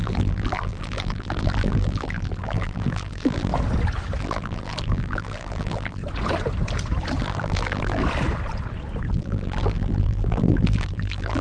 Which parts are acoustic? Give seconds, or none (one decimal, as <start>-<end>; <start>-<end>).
3.5-4.2; 6.0-7.2; 8.0-9.1